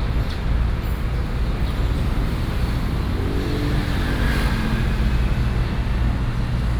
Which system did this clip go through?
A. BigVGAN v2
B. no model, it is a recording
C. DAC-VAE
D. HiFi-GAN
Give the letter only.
B